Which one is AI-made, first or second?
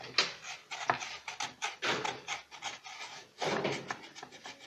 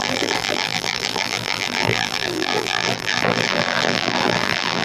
second